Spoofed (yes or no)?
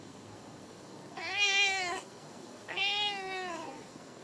yes